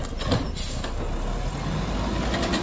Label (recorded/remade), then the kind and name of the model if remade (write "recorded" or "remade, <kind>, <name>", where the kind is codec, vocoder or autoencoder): recorded